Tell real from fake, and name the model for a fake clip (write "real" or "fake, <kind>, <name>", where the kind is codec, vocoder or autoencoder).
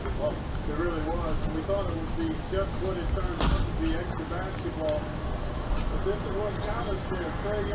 real